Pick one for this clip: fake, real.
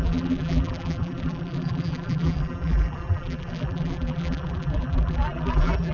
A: fake